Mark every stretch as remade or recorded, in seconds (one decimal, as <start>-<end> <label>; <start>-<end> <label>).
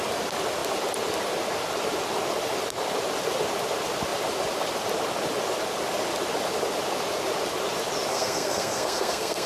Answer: 0.0-8.1 recorded; 8.1-9.5 remade